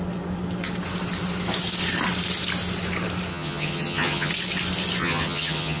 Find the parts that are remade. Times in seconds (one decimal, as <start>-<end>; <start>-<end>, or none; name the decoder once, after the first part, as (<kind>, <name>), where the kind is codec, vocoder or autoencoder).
3.3-4.3 (vocoder, HiFi-GAN); 5.0-5.8